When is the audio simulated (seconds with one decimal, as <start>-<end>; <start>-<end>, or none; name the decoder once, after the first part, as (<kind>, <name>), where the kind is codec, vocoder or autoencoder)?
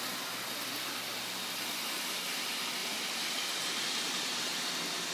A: none